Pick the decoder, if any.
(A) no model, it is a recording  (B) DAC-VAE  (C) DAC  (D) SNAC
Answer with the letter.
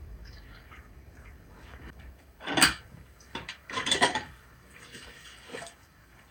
C